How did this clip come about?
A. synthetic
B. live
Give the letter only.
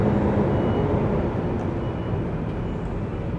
B